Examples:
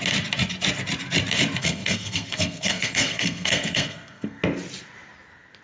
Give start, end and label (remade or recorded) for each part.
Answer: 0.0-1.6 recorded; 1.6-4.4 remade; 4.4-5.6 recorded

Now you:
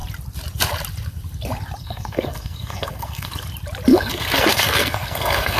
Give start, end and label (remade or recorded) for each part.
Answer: 0.0-1.8 recorded; 1.8-3.3 remade; 3.3-3.9 recorded; 3.9-5.6 remade

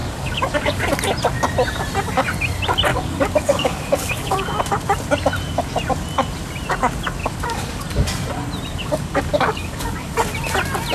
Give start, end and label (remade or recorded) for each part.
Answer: 0.0-0.8 remade; 0.8-2.9 recorded; 2.9-4.6 remade; 4.6-7.2 recorded; 7.2-7.8 remade; 7.8-8.7 recorded; 8.7-10.1 remade; 10.1-10.9 recorded

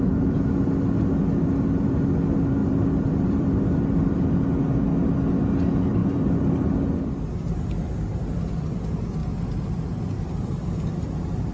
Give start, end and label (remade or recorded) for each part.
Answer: 0.0-2.6 recorded; 2.6-4.1 remade; 4.1-6.0 recorded; 6.0-7.1 remade; 7.1-11.5 recorded

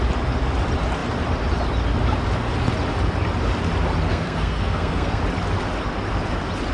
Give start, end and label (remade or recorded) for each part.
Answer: 0.0-4.1 recorded; 4.1-5.2 remade; 5.2-6.7 recorded

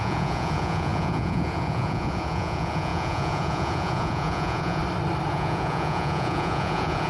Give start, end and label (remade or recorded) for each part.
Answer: 0.0-4.8 remade; 4.8-5.3 recorded; 5.3-7.1 remade

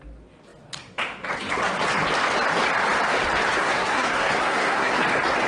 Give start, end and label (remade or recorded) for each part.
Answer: 0.0-3.6 recorded; 3.6-4.9 remade; 4.9-5.5 recorded

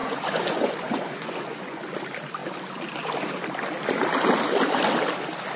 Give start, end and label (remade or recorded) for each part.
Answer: 0.0-1.8 remade; 1.8-5.6 recorded